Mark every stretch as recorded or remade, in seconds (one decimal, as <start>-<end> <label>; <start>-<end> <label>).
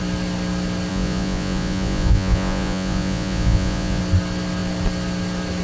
0.0-0.9 recorded; 0.9-4.0 remade; 4.0-5.6 recorded